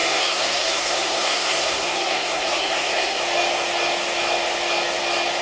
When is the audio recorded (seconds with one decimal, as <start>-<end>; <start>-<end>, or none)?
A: 3.2-5.4